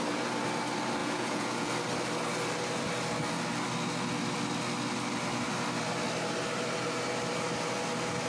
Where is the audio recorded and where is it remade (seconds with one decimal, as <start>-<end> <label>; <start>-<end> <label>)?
0.0-1.0 recorded; 1.0-1.7 remade; 1.7-8.3 recorded

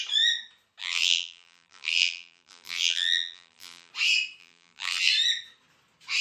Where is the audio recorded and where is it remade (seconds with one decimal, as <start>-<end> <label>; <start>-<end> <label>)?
0.0-0.8 recorded; 0.8-3.9 remade; 3.9-4.4 recorded; 4.4-5.1 remade; 5.1-6.2 recorded

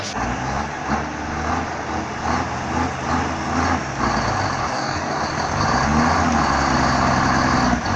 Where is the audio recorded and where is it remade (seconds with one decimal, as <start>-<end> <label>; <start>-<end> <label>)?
0.0-4.6 recorded; 4.6-5.2 remade; 5.2-8.0 recorded

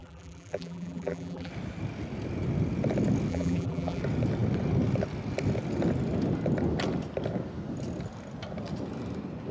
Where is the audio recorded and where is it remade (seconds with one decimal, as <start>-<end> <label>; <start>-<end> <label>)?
0.0-1.5 remade; 1.5-3.3 recorded; 3.3-4.0 remade; 4.0-9.5 recorded

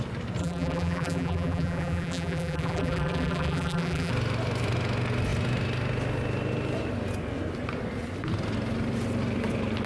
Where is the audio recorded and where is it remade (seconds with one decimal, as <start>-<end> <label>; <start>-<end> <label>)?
0.0-0.4 recorded; 0.4-4.1 remade; 4.1-9.9 recorded

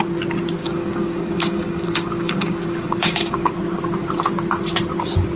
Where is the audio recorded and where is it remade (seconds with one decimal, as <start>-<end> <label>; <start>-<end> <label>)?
0.0-0.6 recorded; 0.6-3.5 remade; 3.5-5.4 recorded